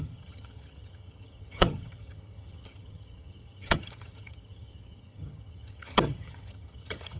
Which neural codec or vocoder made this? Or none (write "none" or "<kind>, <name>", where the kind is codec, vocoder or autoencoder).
vocoder, HiFi-GAN